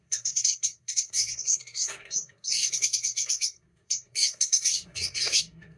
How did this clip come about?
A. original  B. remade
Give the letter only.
B